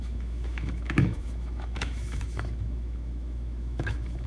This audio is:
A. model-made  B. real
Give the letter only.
A